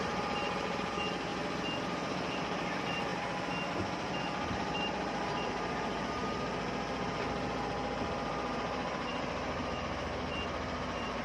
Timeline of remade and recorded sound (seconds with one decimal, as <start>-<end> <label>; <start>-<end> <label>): 0.0-1.3 remade; 1.3-1.8 recorded; 1.8-3.1 remade; 3.1-4.5 recorded; 4.5-6.2 remade; 6.2-8.3 recorded; 8.3-11.2 remade

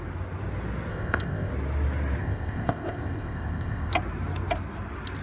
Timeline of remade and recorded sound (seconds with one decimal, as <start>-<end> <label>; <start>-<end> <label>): 0.0-0.9 recorded; 0.9-1.5 remade; 1.5-2.2 recorded; 2.2-3.9 remade; 3.9-5.2 recorded

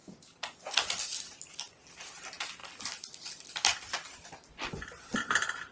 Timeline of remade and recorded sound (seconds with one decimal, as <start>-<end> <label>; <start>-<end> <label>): 0.0-2.6 recorded; 2.6-3.5 remade; 3.5-5.7 recorded